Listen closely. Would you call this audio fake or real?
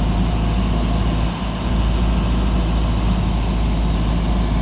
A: real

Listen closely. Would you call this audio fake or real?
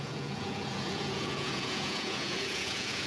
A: fake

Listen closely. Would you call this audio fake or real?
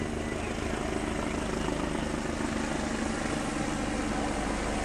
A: real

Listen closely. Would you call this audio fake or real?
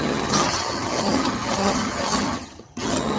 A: fake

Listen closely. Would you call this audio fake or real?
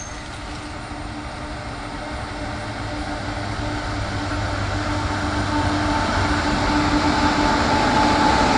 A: real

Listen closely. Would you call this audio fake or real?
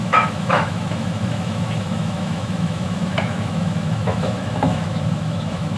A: fake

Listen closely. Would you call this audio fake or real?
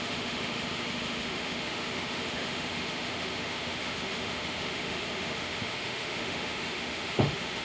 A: fake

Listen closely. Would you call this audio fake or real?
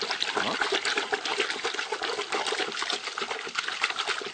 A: real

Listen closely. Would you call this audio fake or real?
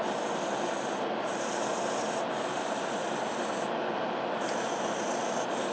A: real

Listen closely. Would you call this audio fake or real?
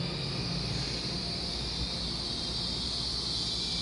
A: real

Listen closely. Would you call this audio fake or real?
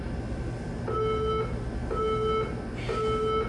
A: real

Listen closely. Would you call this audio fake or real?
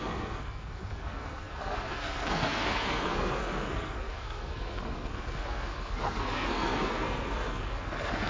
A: fake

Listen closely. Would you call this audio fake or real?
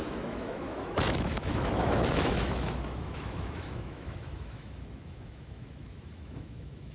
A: fake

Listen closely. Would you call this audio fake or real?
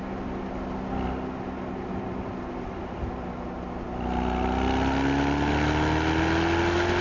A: real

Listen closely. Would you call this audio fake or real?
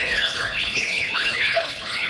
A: fake